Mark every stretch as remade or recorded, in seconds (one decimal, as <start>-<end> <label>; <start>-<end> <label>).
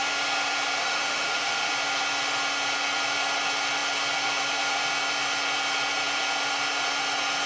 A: 0.0-0.8 recorded; 0.8-1.7 remade; 1.7-7.5 recorded